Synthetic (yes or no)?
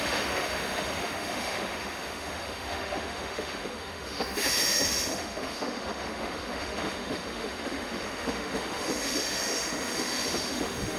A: yes